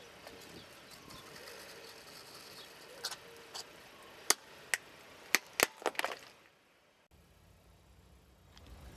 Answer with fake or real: real